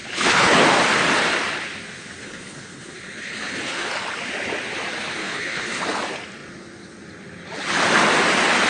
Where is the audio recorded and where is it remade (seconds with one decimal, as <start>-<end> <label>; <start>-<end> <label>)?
0.0-0.6 remade; 0.6-2.2 recorded; 2.2-3.9 remade; 3.9-5.2 recorded; 5.2-5.8 remade; 5.8-8.7 recorded